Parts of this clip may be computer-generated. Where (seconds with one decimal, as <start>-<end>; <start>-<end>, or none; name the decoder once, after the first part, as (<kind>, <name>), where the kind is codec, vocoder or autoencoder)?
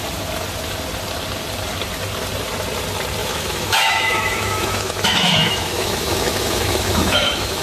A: 3.2-7.6 (autoencoder, DAC-VAE)